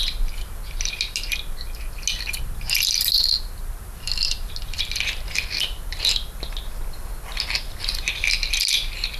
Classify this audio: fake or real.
real